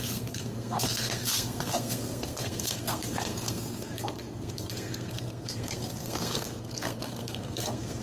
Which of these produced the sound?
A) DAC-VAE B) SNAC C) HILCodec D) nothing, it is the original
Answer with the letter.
B